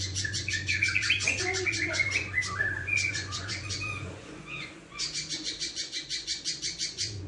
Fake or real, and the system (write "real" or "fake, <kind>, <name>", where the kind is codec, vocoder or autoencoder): fake, vocoder, Vocos